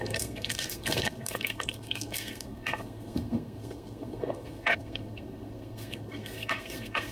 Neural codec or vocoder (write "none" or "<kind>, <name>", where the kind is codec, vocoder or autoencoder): codec, SNAC